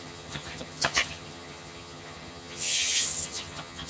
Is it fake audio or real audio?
fake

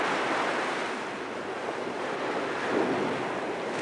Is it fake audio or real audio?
real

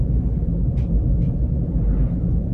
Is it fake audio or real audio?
real